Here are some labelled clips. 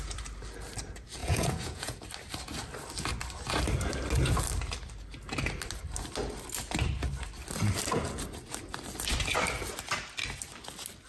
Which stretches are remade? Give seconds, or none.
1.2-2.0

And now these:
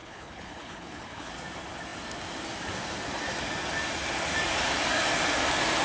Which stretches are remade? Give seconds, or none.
0.0-1.3

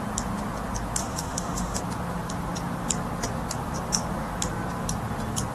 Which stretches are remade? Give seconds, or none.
1.0-1.8

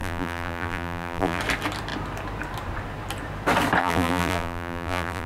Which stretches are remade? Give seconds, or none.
0.0-1.4; 3.8-5.3

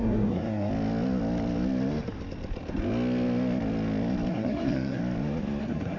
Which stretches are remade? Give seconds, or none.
0.0-0.7; 4.3-5.0; 5.6-6.0

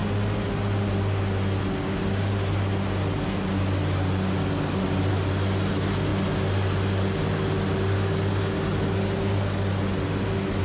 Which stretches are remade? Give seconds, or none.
none